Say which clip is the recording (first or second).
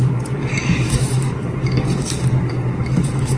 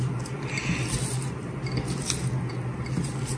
second